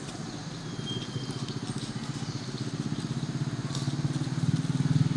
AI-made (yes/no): no